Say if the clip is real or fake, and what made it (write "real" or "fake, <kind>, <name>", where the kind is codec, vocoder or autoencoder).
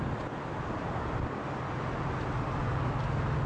real